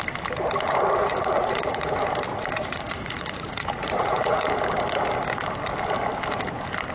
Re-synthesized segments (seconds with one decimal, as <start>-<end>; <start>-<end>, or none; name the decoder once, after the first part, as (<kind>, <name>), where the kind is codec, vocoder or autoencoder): 1.0-1.9 (vocoder, Vocos); 2.3-4.5